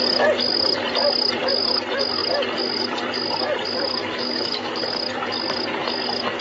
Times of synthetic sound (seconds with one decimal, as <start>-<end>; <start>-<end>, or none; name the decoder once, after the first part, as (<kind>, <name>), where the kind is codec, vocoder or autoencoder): 4.0-4.8 (autoencoder, DAC-VAE)